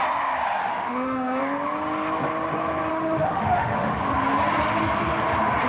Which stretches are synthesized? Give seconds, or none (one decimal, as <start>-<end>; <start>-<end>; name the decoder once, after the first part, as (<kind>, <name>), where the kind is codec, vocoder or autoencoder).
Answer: 0.6-1.4 (autoencoder, DAC-VAE); 2.9-4.0